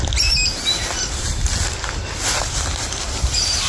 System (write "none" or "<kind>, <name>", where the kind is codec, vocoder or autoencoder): none